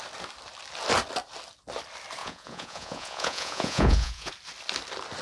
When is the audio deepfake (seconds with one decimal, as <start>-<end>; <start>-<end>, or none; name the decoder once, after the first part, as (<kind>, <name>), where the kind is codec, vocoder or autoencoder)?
2.2-4.3 (vocoder, Vocos)